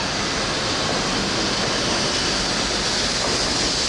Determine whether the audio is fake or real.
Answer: real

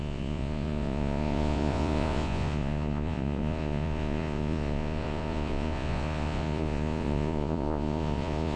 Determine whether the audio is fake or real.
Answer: fake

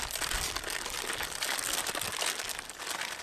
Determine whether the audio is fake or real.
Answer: real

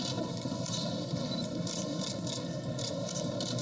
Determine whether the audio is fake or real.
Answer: real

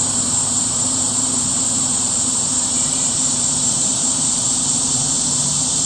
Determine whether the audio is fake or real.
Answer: fake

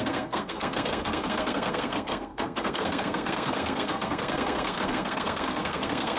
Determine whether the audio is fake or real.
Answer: fake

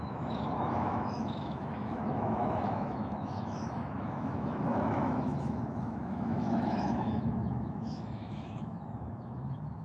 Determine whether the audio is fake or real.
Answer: fake